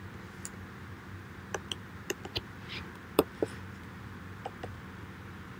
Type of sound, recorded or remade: remade